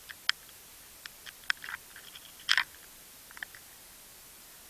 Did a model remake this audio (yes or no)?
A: no